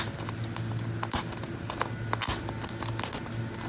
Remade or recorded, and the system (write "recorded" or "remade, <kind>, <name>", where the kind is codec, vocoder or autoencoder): recorded